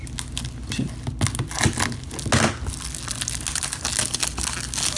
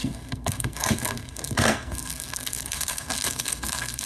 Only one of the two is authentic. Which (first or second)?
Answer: first